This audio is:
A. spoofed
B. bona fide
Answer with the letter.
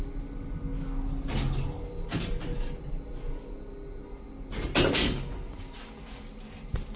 B